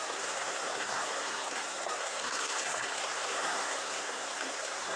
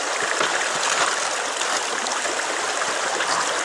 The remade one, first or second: first